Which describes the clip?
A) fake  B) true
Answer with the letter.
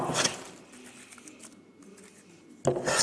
B